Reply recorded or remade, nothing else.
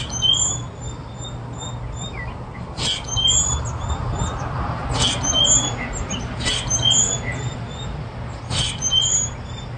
recorded